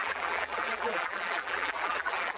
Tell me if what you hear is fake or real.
fake